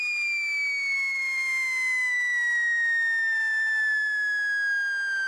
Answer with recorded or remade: recorded